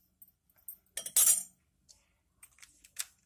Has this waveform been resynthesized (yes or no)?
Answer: no